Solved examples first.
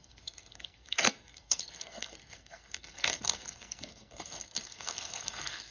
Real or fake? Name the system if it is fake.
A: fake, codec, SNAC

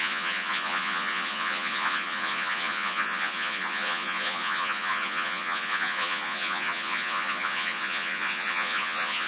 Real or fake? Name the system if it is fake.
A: fake, vocoder, Vocos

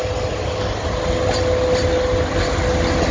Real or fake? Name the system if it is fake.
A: real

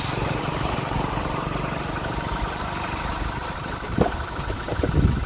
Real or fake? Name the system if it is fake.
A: fake, vocoder, BigVGAN v2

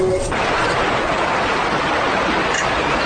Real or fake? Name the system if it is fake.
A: real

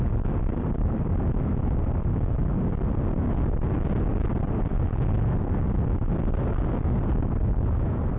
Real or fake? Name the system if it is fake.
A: real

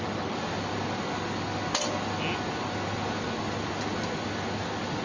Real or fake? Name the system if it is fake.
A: real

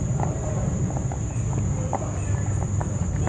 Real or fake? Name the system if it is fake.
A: real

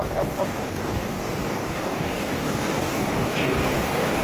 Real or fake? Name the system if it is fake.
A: fake, codec, DAC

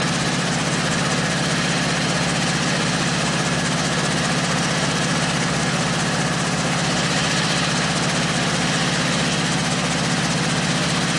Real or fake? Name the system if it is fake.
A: real